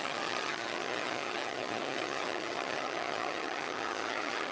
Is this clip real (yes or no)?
no